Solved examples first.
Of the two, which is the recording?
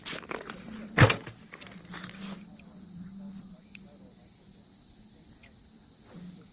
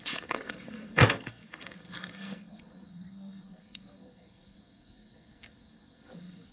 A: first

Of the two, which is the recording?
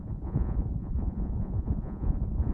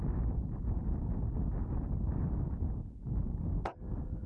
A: second